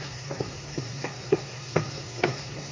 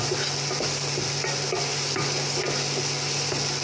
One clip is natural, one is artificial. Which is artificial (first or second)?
first